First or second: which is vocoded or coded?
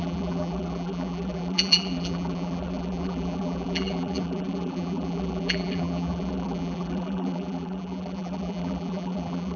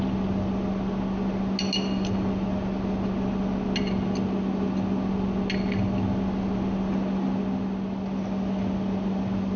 first